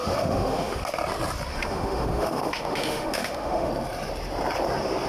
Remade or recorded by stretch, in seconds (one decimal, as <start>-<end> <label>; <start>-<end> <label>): 0.0-0.8 remade; 0.8-1.5 recorded; 1.5-3.7 remade; 3.7-5.1 recorded